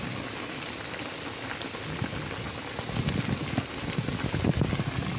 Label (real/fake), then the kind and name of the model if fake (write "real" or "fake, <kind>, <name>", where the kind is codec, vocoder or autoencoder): real